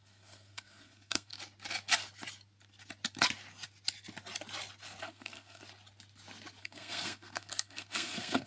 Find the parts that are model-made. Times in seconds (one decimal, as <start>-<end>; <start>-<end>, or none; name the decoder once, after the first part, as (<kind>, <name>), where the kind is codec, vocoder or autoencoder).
0.0-1.3 (codec, SNAC); 5.0-5.6; 6.6-8.5

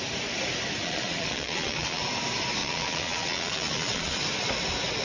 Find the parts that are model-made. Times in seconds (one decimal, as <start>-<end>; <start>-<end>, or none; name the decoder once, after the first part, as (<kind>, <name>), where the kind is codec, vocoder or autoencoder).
0.8-2.0 (vocoder, Vocos); 2.6-4.2